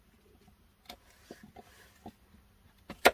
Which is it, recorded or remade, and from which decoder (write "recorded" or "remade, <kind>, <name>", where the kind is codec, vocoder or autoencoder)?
recorded